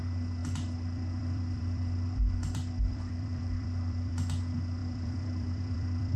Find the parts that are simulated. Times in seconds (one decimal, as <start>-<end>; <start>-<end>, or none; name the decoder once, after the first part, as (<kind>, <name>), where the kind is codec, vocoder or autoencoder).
0.4-4.1 (vocoder, BigVGAN v2); 4.8-6.2